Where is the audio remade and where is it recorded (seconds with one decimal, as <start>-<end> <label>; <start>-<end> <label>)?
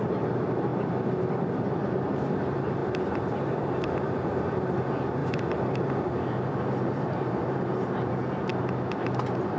0.0-2.8 recorded; 2.8-4.4 remade; 4.4-5.2 recorded; 5.2-8.1 remade; 8.1-9.6 recorded